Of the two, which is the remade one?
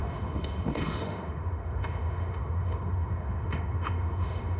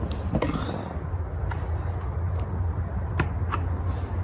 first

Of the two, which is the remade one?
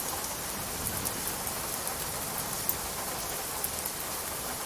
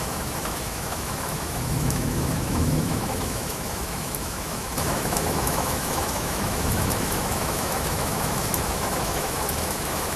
second